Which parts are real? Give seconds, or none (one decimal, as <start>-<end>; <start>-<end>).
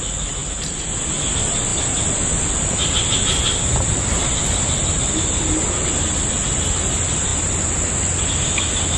0.0-9.0